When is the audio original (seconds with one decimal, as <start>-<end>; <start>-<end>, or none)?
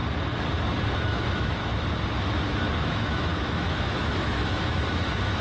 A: 0.0-1.0; 1.6-2.8